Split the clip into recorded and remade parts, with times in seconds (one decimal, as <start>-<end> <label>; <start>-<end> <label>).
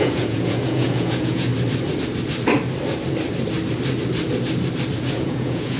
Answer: 0.0-1.5 remade; 1.5-5.0 recorded; 5.0-5.8 remade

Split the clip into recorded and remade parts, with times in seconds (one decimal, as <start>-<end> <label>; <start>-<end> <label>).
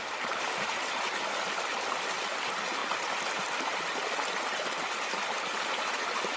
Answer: 0.0-6.4 recorded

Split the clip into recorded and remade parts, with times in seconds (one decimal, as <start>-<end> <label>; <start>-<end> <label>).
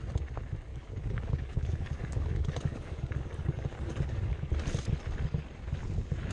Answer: 0.0-0.7 recorded; 0.7-4.5 remade; 4.5-6.3 recorded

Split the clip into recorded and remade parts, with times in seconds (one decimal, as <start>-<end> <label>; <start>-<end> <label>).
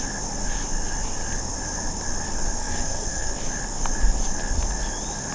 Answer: 0.0-2.6 recorded; 2.6-3.3 remade; 3.3-5.3 recorded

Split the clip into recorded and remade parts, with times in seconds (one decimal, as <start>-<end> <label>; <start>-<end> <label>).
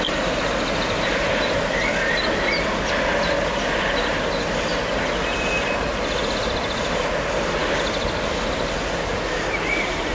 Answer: 0.0-10.1 recorded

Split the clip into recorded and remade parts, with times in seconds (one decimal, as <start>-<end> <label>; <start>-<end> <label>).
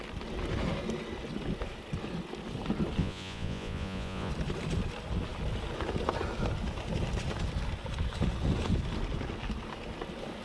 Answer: 0.0-3.0 recorded; 3.0-4.3 remade; 4.3-10.4 recorded